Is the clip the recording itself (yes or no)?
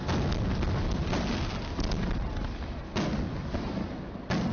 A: yes